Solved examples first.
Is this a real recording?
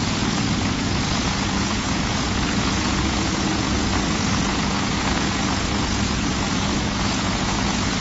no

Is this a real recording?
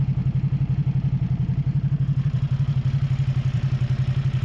yes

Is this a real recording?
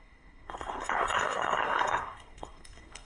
no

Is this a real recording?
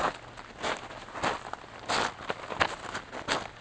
yes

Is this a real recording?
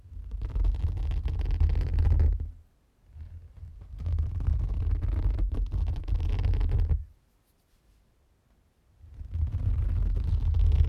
yes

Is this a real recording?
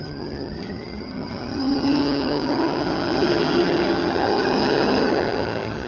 no